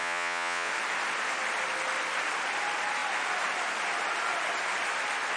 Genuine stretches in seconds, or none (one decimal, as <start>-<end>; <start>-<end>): 0.7-5.4